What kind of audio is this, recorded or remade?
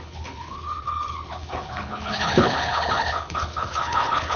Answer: remade